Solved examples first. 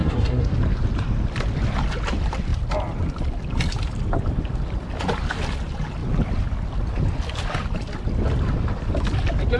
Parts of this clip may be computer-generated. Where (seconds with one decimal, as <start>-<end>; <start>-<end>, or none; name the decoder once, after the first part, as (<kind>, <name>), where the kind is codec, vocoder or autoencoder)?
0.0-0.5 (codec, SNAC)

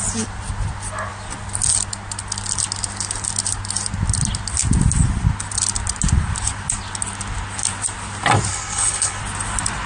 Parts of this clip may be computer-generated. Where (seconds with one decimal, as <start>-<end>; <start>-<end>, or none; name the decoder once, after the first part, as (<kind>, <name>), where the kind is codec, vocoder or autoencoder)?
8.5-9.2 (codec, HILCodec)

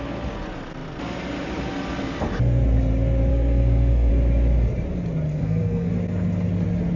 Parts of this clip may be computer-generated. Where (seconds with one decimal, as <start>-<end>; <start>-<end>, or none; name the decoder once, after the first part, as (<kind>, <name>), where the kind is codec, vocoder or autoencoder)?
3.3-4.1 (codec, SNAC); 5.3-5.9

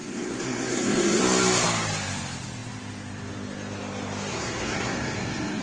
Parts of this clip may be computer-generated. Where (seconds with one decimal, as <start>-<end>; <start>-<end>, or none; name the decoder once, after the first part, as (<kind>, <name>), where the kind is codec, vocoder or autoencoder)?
0.0-1.2 (codec, SNAC); 4.3-5.6